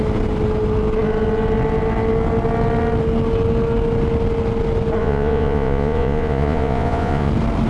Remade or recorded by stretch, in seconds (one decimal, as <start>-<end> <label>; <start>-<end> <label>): 0.0-5.0 recorded; 5.0-7.3 remade; 7.3-7.7 recorded